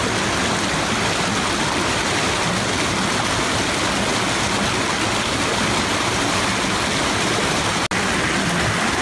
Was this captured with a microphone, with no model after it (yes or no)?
yes